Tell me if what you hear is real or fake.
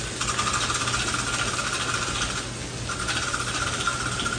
real